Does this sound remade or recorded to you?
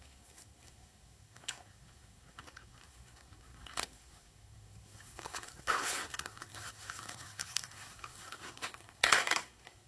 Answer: remade